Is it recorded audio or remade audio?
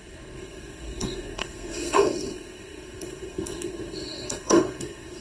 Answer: remade